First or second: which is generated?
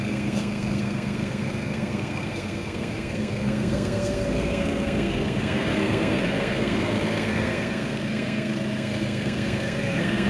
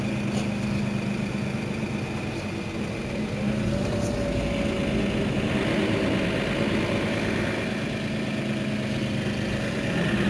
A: first